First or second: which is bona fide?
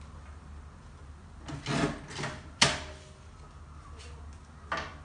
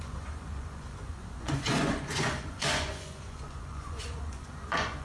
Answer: first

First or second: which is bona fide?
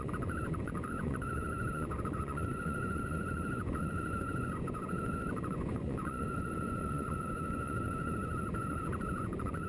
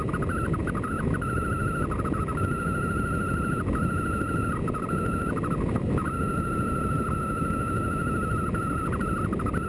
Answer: second